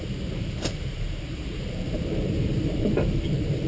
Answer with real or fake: fake